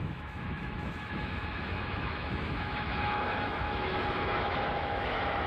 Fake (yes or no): yes